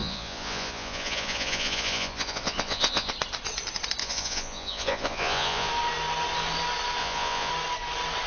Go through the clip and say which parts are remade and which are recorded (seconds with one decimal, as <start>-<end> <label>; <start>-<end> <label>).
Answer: 0.0-3.1 remade; 3.1-4.0 recorded; 4.0-5.7 remade; 5.7-7.0 recorded; 7.0-7.5 remade; 7.5-8.3 recorded